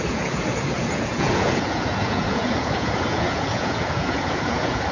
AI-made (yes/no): yes